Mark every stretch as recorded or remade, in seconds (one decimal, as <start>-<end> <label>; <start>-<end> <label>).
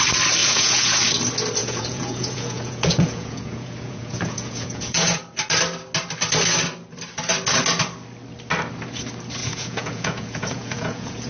0.0-0.4 recorded; 0.4-1.0 remade; 1.0-1.6 recorded; 1.6-5.2 remade; 5.2-9.4 recorded; 9.4-11.3 remade